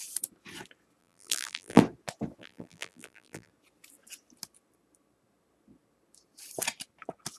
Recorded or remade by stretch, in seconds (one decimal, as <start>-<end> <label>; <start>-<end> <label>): 0.0-1.0 recorded; 1.0-1.8 remade; 1.8-2.4 recorded; 2.4-3.5 remade; 3.5-7.4 recorded